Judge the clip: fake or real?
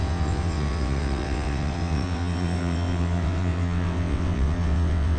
fake